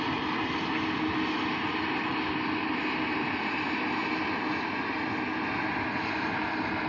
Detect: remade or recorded recorded